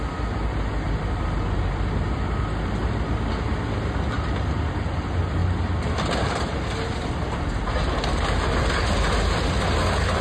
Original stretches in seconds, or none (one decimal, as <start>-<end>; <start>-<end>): 0.0-10.2